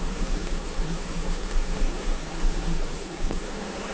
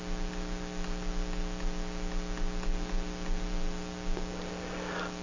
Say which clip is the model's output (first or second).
first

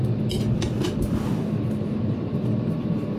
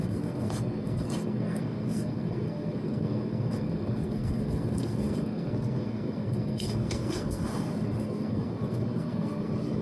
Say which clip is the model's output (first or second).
second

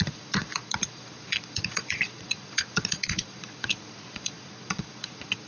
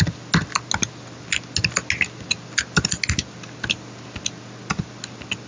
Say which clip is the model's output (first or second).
first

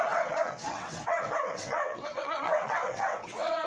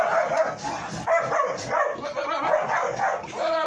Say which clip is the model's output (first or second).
first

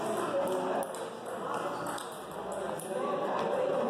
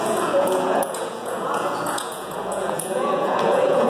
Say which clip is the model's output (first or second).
second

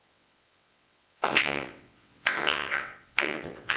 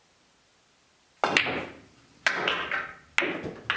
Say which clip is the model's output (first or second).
first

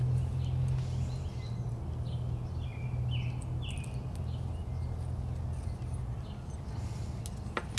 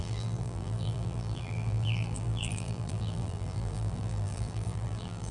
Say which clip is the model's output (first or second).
second